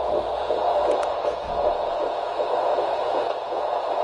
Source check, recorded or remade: remade